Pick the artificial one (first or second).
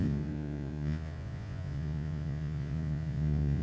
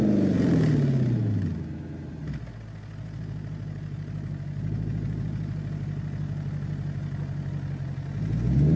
first